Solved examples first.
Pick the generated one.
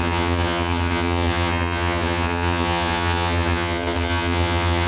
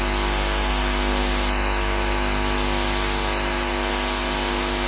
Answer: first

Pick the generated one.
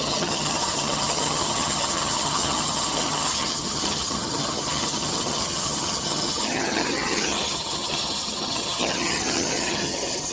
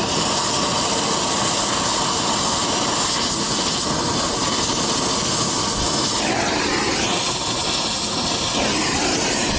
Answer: first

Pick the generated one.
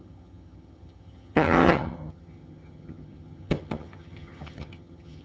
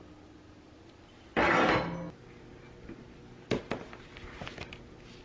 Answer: first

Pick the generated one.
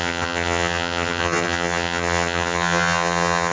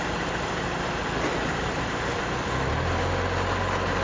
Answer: first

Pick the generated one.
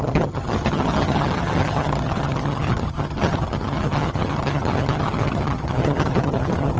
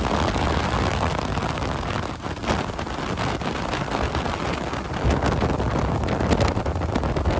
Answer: first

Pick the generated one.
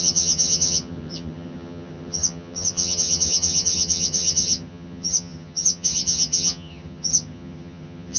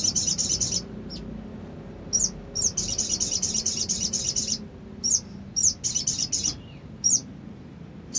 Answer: first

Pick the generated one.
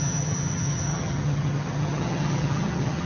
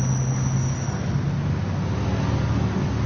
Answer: first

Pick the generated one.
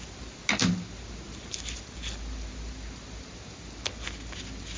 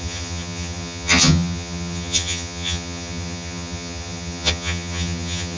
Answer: second